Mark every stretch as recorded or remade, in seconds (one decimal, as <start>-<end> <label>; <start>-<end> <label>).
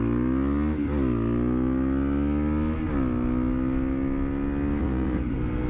0.0-4.8 recorded; 4.8-5.3 remade; 5.3-5.7 recorded